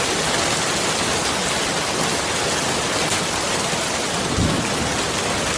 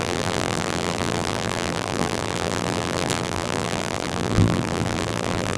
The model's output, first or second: second